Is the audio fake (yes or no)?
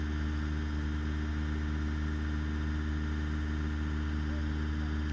no